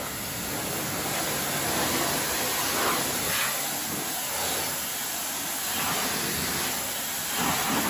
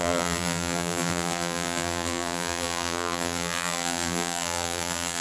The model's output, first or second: second